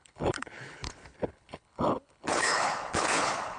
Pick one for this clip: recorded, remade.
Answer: remade